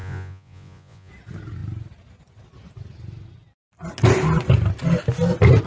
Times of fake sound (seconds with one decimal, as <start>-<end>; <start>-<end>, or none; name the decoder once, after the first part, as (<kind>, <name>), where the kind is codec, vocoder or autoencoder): 0.0-1.1 (vocoder, Vocos)

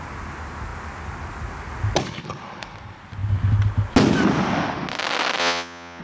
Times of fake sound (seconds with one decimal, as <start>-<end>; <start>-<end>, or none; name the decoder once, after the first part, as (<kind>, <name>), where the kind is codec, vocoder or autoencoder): 5.4-6.0 (vocoder, Vocos)

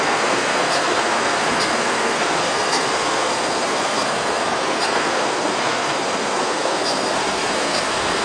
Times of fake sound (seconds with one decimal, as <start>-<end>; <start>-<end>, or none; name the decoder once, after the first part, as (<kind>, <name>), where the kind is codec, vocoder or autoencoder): 0.0-8.2 (codec, SNAC)

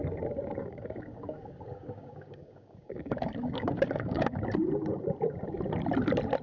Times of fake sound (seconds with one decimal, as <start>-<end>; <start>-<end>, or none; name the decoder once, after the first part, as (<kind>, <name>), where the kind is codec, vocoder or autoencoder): 0.6-4.4 (codec, DAC)